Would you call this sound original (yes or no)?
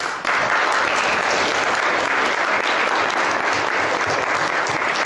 yes